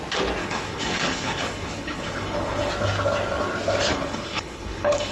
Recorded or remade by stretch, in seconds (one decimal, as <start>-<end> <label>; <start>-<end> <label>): 0.0-0.4 recorded; 0.4-2.7 remade; 2.7-3.9 recorded; 3.9-5.1 remade